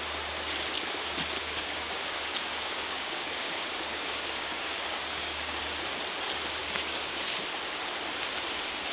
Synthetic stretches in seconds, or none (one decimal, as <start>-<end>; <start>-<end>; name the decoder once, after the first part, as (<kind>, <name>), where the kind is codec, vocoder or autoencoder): 1.4-5.6 (codec, DAC); 6.6-7.3